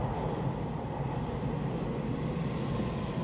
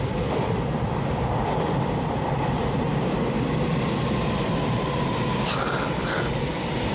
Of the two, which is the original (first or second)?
first